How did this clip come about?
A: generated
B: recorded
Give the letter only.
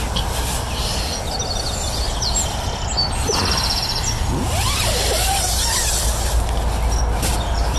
B